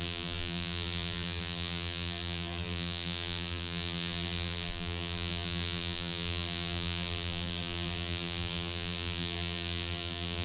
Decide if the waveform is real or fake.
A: fake